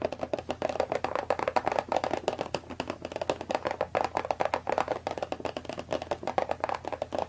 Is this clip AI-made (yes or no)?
no